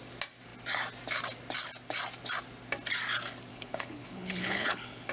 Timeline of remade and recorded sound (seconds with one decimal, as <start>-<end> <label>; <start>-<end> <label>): 0.0-3.5 recorded; 3.5-5.1 remade